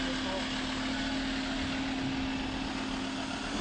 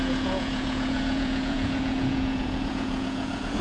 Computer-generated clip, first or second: second